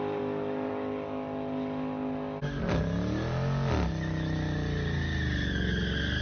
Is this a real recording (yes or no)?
yes